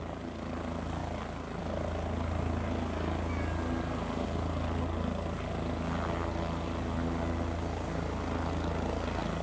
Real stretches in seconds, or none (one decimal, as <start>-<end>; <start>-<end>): 0.0-9.4